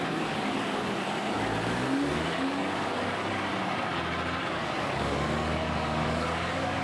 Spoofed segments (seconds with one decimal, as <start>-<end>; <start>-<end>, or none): 0.0-3.5; 4.4-6.8